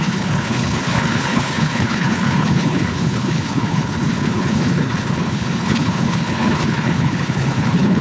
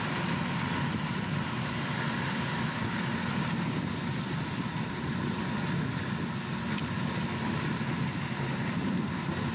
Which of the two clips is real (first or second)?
second